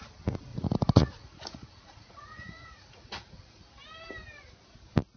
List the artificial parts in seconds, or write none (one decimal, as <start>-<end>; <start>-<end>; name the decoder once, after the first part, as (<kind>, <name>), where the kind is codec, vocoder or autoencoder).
0.5-3.6 (vocoder, Vocos)